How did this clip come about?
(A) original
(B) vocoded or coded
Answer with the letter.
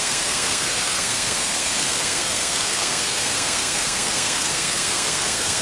B